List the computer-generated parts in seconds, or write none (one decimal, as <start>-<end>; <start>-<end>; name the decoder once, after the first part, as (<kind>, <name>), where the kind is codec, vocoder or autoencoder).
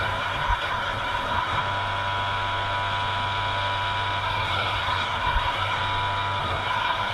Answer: 0.0-1.6 (codec, SNAC); 4.2-5.8; 6.4-7.1